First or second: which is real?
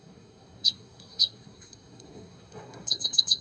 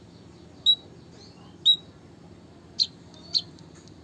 second